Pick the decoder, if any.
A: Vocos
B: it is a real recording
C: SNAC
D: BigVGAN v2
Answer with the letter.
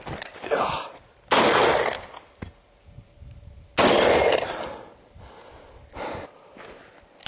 B